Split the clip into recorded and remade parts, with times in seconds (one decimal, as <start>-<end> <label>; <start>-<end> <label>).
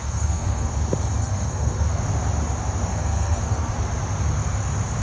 0.0-0.7 remade; 0.7-1.2 recorded; 1.2-2.0 remade; 2.0-2.9 recorded; 2.9-3.7 remade; 3.7-5.0 recorded